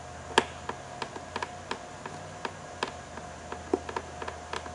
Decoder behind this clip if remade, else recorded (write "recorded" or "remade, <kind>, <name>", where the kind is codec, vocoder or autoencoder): recorded